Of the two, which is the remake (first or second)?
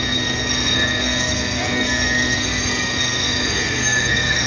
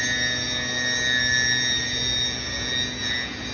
first